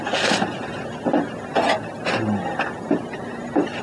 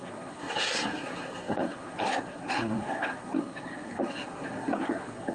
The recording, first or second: first